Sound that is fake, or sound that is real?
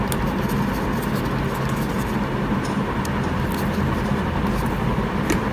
real